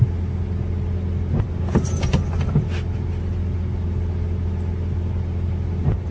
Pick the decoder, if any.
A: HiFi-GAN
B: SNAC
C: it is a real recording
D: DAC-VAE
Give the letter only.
C